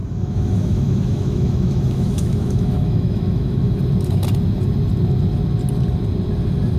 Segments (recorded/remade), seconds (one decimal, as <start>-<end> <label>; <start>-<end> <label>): 0.0-3.8 remade; 3.8-6.8 recorded

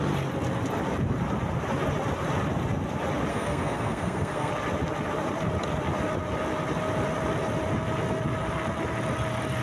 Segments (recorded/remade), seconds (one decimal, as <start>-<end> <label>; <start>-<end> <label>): 0.0-3.3 recorded; 3.3-4.5 remade; 4.5-9.6 recorded